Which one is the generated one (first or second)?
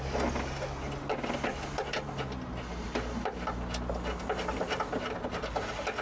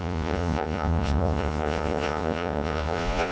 second